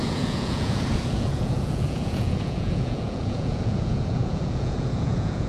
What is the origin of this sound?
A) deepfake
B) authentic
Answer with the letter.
A